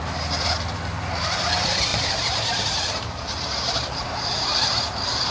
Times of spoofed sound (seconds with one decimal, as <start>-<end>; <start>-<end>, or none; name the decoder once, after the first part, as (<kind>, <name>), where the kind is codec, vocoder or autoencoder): 1.9-5.3 (vocoder, BigVGAN v2)